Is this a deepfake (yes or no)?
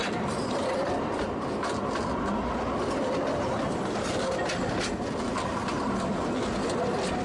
no